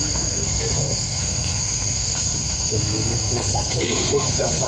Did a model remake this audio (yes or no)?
yes